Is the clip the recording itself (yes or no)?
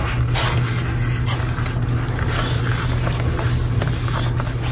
yes